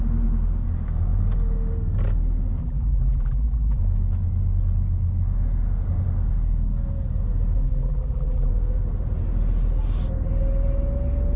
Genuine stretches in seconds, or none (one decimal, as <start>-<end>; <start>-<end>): 0.0-2.6; 3.8-7.6; 8.5-11.4